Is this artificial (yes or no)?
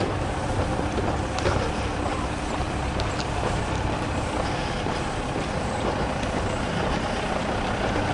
yes